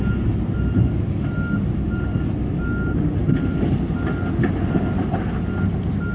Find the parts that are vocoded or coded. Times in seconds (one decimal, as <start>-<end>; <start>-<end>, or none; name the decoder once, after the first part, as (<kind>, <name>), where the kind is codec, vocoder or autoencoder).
none